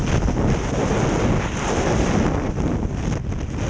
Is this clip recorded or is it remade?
recorded